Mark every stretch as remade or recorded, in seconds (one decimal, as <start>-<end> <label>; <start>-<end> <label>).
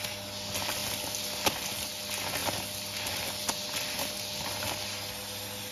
0.0-5.7 recorded